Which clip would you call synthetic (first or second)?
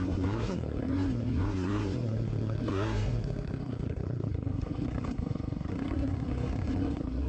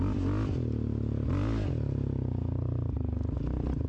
first